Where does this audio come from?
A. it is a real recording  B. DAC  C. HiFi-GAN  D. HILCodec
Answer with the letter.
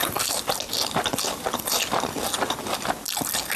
A